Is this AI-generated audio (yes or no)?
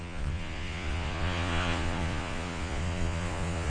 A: yes